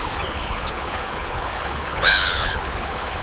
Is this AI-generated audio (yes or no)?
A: yes